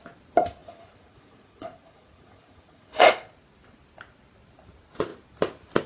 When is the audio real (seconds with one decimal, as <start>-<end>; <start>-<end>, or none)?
0.0-0.6; 3.1-5.9